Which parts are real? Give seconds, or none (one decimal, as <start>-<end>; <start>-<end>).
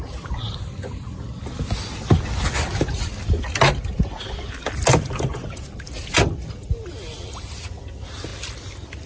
0.0-9.1